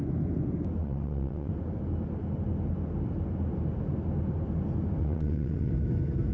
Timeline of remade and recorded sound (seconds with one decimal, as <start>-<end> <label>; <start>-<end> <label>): 0.0-0.8 recorded; 0.8-1.5 remade; 1.5-5.0 recorded; 5.0-5.7 remade; 5.7-6.3 recorded

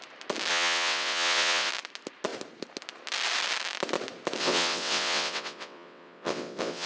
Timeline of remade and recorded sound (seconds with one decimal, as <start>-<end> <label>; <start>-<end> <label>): 0.0-0.5 recorded; 0.5-1.7 remade; 1.7-4.4 recorded; 4.4-6.9 remade

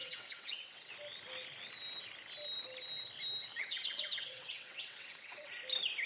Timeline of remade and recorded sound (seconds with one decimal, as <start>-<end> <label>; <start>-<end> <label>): 0.0-0.9 remade; 0.9-3.5 recorded; 3.5-5.5 remade; 5.5-6.1 recorded

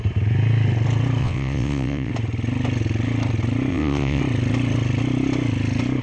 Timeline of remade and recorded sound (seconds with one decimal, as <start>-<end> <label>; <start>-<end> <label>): 0.0-1.2 recorded; 1.2-2.1 remade; 2.1-3.7 recorded; 3.7-4.2 remade; 4.2-6.0 recorded

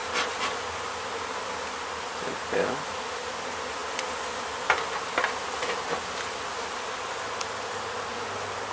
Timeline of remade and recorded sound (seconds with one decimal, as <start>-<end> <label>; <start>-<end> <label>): 0.0-8.7 recorded

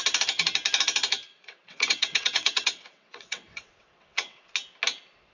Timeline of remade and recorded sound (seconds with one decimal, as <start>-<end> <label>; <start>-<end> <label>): 0.0-1.3 recorded; 1.3-4.5 remade; 4.5-5.3 recorded